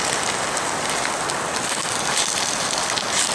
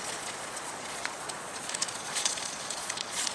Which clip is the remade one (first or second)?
second